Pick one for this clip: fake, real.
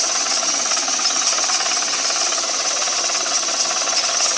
fake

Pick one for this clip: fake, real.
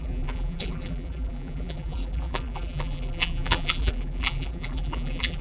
fake